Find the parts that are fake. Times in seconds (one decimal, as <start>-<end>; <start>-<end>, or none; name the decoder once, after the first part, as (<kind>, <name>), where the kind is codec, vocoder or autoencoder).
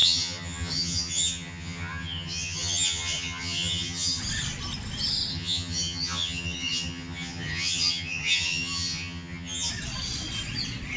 0.0-4.2 (vocoder, HiFi-GAN); 5.3-9.7